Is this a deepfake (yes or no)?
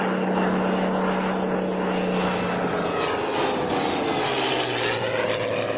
no